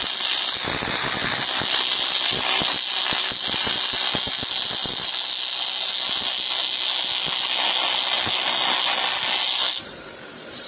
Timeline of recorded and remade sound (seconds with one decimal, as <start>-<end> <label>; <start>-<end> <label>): 0.0-10.7 recorded